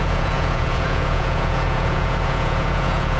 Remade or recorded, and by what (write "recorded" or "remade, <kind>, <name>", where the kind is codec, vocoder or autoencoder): remade, vocoder, Vocos